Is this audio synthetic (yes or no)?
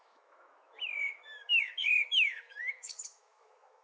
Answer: yes